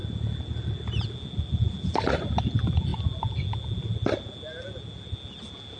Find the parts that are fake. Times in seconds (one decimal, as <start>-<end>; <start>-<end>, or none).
none